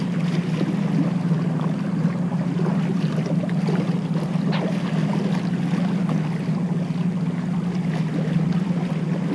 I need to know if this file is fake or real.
real